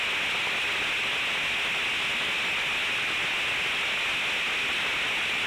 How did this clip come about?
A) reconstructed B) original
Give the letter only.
B